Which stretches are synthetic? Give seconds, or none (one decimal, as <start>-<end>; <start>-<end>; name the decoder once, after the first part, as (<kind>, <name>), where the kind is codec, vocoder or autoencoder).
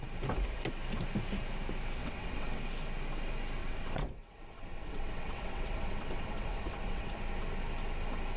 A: 2.0-2.6 (vocoder, WaveNeXt); 3.6-7.2